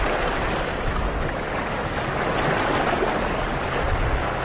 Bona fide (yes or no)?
yes